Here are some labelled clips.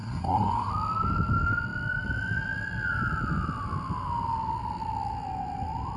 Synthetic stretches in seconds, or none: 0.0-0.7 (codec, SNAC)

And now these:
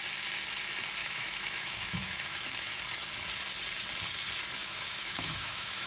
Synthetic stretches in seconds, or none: 1.0-2.8 (autoencoder, DAC-VAE); 4.6-5.9